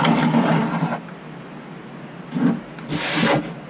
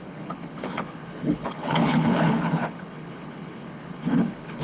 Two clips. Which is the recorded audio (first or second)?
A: first